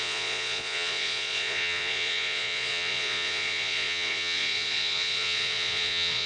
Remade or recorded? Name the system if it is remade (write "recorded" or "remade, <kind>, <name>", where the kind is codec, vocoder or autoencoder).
remade, vocoder, Vocos